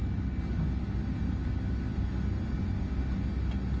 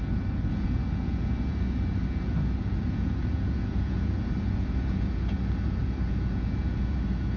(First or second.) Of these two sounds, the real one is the first